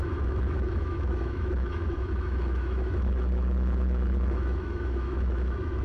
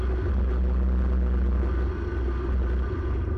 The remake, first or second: first